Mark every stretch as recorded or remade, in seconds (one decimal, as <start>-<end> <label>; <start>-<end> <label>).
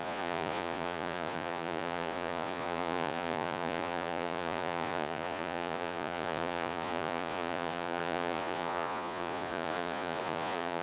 0.0-10.8 remade